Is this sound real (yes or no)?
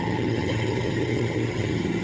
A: no